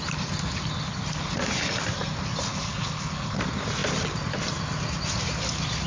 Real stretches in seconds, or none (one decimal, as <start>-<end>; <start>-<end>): 0.0-2.5; 3.4-5.9